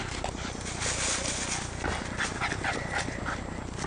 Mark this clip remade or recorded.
recorded